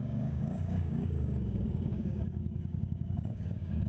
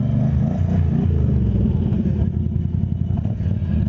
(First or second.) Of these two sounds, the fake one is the first